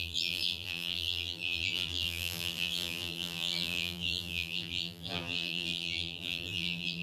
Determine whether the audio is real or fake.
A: fake